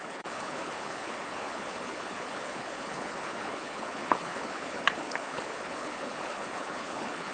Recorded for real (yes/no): no